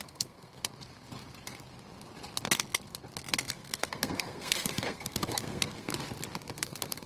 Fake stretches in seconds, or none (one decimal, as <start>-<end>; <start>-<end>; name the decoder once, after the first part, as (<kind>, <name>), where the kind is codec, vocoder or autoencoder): 0.0-0.6 (codec, SNAC); 3.5-5.9; 6.6-7.1